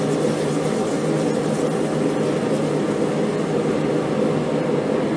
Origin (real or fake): real